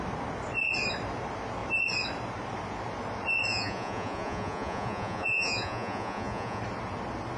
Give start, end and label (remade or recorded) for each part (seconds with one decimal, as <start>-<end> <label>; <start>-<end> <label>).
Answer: 0.0-3.5 recorded; 3.5-6.6 remade; 6.6-7.4 recorded